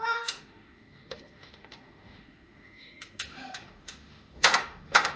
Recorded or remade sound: remade